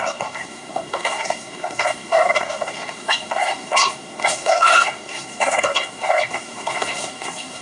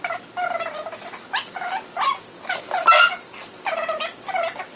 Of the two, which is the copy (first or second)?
first